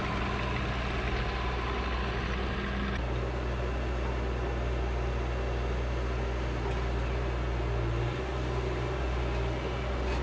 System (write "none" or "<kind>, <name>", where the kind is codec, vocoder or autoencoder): none